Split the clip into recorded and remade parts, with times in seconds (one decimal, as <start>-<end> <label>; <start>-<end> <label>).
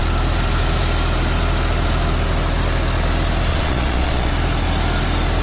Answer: 0.0-3.5 recorded; 3.5-4.3 remade; 4.3-5.4 recorded